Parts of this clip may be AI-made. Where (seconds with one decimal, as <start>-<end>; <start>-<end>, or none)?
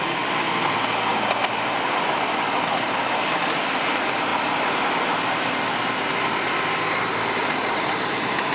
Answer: 7.4-8.5